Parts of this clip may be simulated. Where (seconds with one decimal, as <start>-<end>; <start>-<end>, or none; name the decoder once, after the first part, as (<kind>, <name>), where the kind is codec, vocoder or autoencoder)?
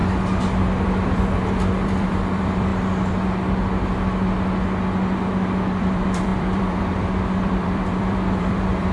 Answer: 0.7-2.7 (vocoder, BigVGAN v2); 5.8-8.9